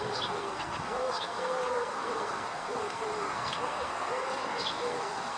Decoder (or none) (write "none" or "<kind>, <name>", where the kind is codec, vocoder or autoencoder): codec, SNAC